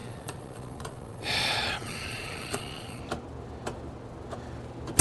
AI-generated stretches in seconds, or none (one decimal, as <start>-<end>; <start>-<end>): 0.0-3.0